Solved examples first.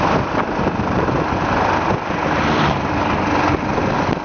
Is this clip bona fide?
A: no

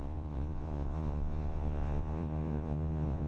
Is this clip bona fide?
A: no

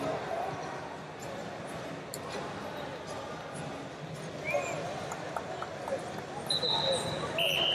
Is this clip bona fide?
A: yes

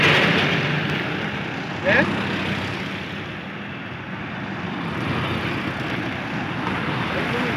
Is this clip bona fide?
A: yes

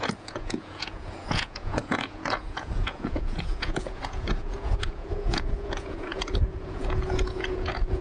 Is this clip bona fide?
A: no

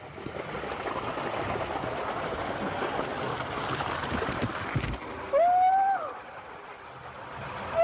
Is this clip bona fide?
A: yes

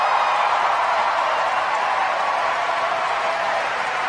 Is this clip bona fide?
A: no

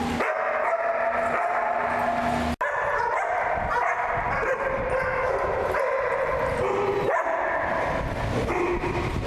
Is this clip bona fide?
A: yes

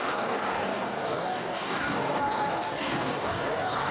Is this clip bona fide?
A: no